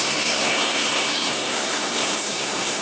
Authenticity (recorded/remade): remade